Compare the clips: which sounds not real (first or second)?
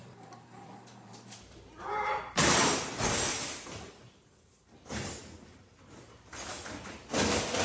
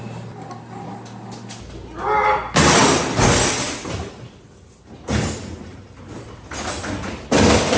first